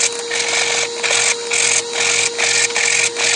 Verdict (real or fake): real